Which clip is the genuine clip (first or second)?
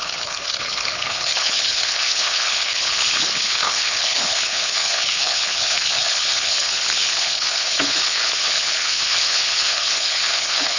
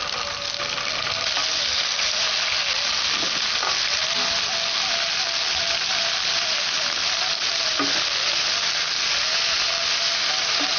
second